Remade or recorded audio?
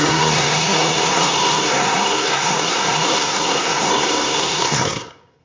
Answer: remade